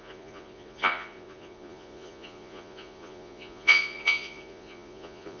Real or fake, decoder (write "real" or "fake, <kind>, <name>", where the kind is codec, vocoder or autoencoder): fake, vocoder, Vocos